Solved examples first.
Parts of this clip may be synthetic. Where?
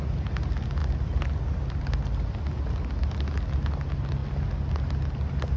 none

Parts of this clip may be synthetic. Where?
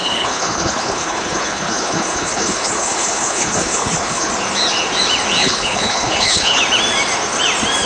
0.0-4.3 (codec, HILCodec); 5.4-6.6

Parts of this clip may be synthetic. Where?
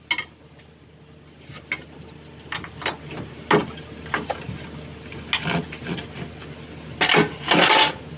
none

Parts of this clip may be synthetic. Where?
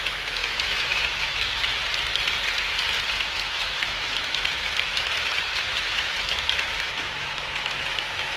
0.0-1.8 (autoencoder, DAC-VAE); 3.1-8.4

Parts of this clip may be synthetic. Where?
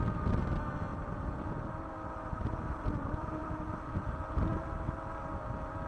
0.9-1.7 (vocoder, BigVGAN v2); 3.4-3.9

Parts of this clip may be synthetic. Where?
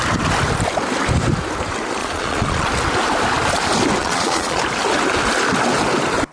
2.0-2.7 (vocoder, Vocos); 4.0-4.6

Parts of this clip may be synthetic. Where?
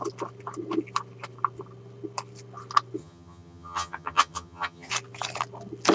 3.0-4.9 (vocoder, HiFi-GAN)